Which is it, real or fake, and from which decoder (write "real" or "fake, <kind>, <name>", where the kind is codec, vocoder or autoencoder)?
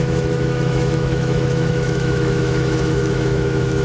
fake, autoencoder, DAC-VAE